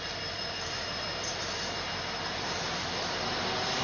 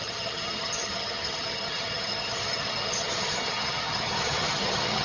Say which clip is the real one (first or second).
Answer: first